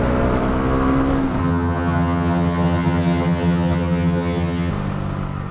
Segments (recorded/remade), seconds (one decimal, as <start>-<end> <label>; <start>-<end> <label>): 0.0-1.4 recorded; 1.4-4.7 remade; 4.7-5.5 recorded